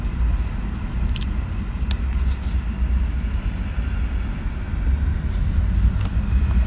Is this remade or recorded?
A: recorded